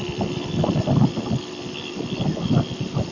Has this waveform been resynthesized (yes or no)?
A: no